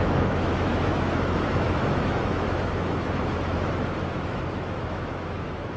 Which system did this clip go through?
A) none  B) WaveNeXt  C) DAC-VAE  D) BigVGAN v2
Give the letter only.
C